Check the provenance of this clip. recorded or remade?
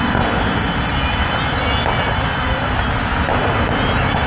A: recorded